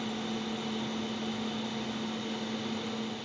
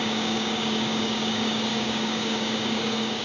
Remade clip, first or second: second